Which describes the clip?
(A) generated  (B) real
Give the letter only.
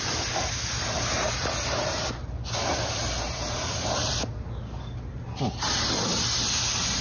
B